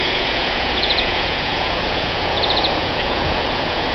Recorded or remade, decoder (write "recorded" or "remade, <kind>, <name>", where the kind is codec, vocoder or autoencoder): remade, vocoder, Vocos